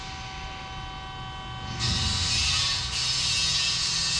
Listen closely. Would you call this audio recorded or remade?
recorded